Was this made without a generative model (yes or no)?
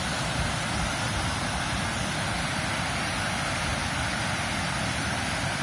yes